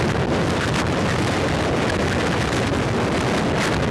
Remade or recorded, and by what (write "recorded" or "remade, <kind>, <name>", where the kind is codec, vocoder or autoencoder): recorded